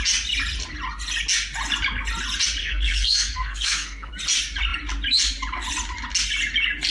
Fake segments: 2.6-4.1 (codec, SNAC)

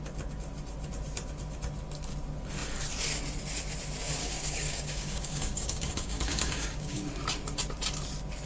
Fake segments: 4.2-7.1 (codec, DAC)

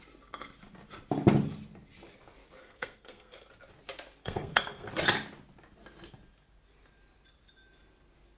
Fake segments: 2.6-3.5 (codec, SNAC); 4.2-4.9

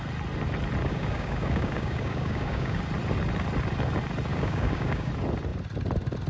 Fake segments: 0.8-2.8 (codec, DAC); 4.3-5.1

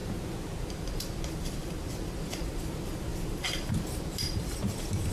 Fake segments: 0.6-5.1 (vocoder, BigVGAN v2)

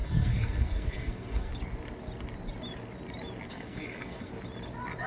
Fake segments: 0.0-1.5 (codec, SNAC); 3.5-4.3